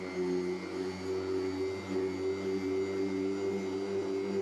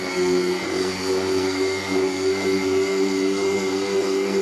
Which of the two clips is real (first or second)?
first